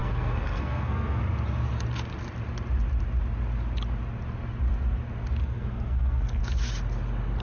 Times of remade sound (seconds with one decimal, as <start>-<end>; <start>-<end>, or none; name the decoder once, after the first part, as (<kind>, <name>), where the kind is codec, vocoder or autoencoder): 0.0-1.2 (codec, SNAC); 5.4-6.4